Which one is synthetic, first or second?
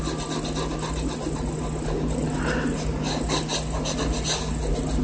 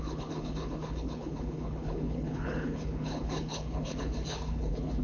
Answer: second